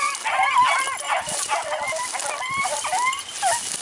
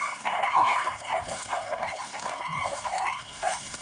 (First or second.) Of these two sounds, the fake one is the second